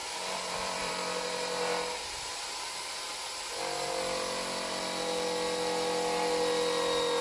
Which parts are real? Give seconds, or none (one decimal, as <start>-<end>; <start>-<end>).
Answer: 0.9-7.2